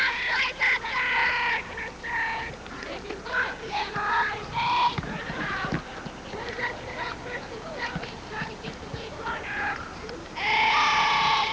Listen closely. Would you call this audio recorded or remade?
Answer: recorded